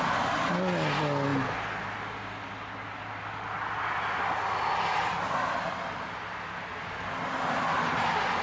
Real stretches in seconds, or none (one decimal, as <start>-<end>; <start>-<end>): 0.0-8.4